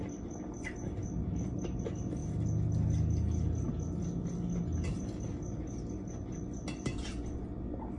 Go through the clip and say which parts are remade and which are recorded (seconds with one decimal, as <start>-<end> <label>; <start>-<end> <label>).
0.0-8.0 recorded